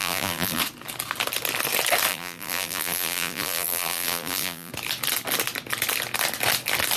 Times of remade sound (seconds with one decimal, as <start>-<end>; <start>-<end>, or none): 0.0-0.6; 2.1-4.7